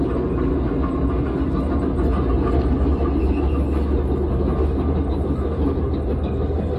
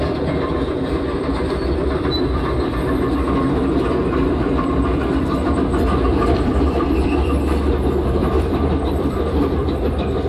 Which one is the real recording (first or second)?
first